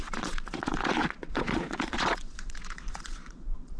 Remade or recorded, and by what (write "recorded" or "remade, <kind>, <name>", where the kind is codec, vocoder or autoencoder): remade, vocoder, Vocos